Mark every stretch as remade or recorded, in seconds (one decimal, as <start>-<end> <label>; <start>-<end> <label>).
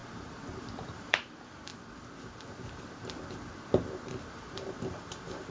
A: 0.0-0.6 recorded; 0.6-1.7 remade; 1.7-4.2 recorded; 4.2-5.5 remade